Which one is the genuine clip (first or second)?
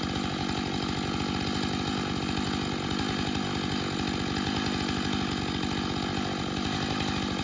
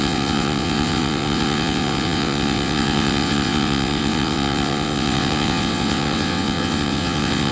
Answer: first